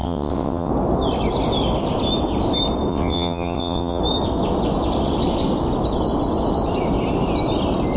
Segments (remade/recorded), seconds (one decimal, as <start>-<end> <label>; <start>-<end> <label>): 0.0-0.7 remade; 0.7-2.9 recorded; 2.9-4.0 remade; 4.0-8.0 recorded